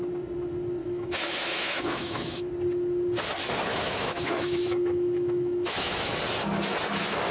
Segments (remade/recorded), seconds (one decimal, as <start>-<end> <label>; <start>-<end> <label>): 0.0-0.8 recorded; 0.8-2.5 remade; 2.5-3.7 recorded; 3.7-6.2 remade; 6.2-7.3 recorded